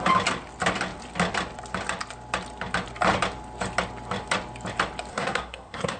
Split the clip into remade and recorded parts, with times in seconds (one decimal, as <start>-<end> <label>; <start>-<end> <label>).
0.0-5.1 recorded; 5.1-6.0 remade